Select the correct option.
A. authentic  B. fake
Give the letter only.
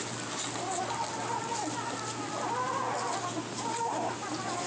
A